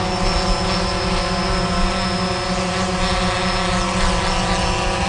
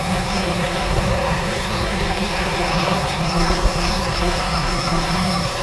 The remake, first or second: second